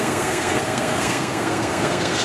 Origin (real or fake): fake